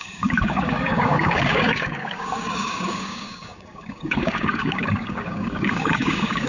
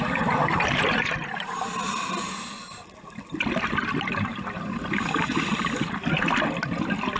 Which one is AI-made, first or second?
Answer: first